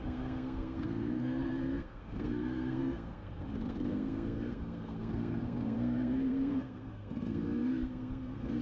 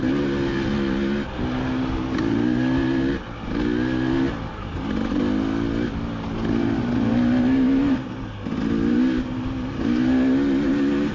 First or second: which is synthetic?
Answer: first